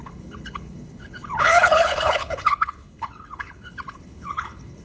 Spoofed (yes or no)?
yes